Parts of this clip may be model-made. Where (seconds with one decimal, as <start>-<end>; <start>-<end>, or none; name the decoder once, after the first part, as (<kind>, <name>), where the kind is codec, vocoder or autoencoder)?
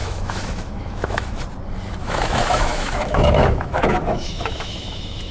0.0-1.4 (autoencoder, DAC-VAE); 2.0-5.3